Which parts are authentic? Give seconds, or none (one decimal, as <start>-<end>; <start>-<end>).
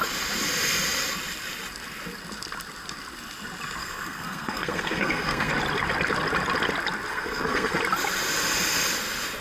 0.0-3.8; 5.5-7.1; 7.8-9.4